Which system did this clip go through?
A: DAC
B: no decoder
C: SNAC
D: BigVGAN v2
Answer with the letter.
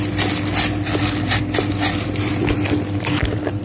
B